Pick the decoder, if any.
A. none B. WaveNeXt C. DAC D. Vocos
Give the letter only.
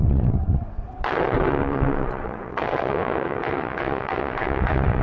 B